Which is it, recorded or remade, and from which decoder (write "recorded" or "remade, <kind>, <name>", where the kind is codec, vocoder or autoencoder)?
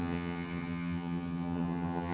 remade, vocoder, HiFi-GAN